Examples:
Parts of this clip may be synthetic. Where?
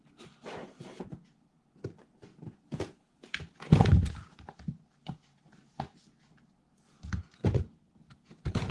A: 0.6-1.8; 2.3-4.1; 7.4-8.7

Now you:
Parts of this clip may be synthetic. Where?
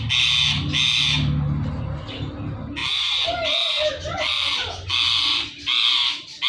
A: 2.8-4.9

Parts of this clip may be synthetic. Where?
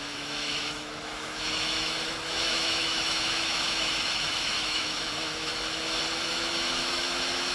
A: 0.0-5.5; 6.3-7.5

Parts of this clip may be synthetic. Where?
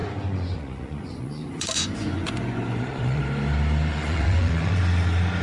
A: 0.0-3.2; 3.9-4.8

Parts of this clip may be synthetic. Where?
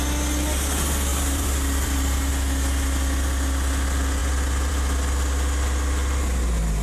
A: 1.1-2.3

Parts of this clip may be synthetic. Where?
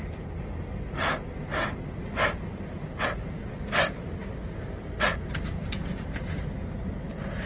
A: none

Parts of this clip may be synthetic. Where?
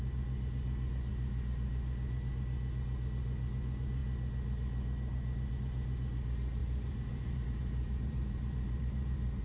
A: 6.6-9.4